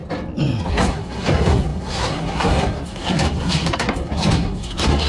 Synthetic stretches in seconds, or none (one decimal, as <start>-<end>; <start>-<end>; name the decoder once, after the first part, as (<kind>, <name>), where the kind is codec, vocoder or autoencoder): 0.7-5.1 (codec, SNAC)